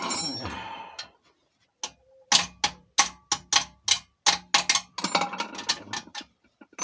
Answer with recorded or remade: recorded